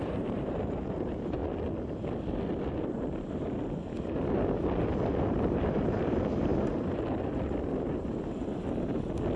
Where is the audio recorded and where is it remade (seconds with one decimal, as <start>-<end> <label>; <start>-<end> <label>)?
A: 0.0-1.4 remade; 1.4-5.6 recorded; 5.6-6.5 remade; 6.5-7.7 recorded; 7.7-8.4 remade; 8.4-9.4 recorded